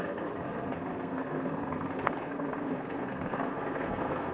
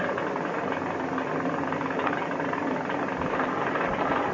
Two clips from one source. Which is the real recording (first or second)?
second